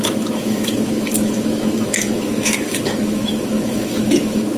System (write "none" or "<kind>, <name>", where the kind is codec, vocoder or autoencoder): autoencoder, DAC-VAE